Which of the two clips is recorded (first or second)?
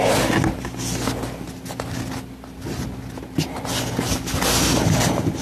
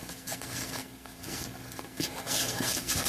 first